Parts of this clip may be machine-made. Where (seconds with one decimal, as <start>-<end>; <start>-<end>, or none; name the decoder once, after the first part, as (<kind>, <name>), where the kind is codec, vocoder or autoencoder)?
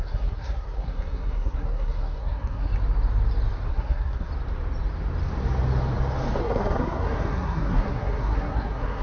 0.0-2.7 (codec, SNAC); 3.7-4.3; 6.4-9.0